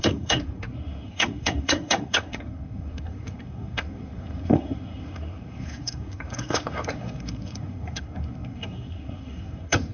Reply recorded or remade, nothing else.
remade